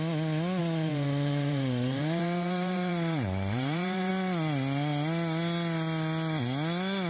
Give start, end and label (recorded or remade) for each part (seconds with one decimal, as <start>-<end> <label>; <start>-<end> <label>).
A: 0.0-0.6 recorded; 0.6-4.1 remade; 4.1-7.1 recorded